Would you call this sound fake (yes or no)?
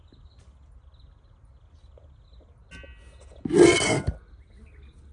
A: no